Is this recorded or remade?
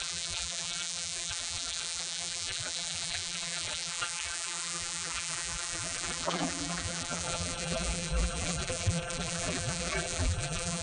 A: remade